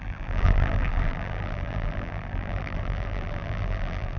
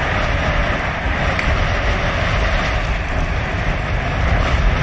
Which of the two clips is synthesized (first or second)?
first